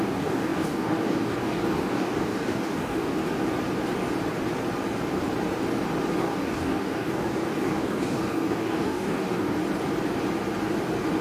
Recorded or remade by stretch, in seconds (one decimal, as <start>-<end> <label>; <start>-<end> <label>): 0.0-3.2 remade; 3.2-6.2 recorded; 6.2-9.6 remade; 9.6-11.2 recorded